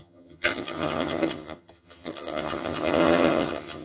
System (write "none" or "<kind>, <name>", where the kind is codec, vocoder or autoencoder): vocoder, HiFi-GAN